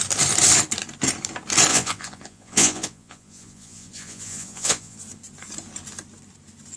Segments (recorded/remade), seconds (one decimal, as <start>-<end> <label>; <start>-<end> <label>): 0.0-1.7 recorded; 1.7-5.0 remade; 5.0-6.8 recorded